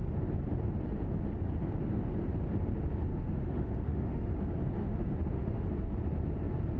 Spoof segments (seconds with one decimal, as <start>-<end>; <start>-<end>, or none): 3.1-4.3; 4.8-5.6